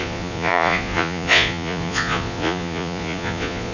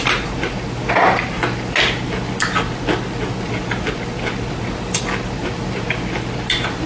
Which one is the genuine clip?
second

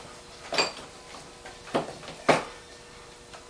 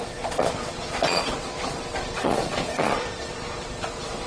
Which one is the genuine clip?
first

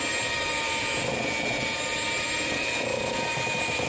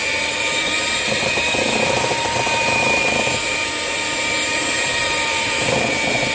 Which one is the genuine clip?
first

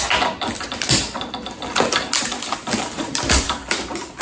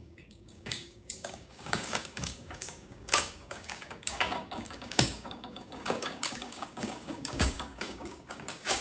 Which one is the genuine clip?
first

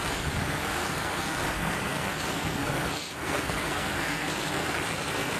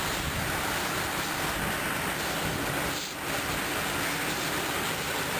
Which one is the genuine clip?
second